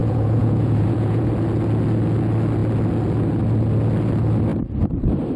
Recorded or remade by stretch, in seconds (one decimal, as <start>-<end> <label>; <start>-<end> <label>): 0.0-1.3 remade; 1.3-5.4 recorded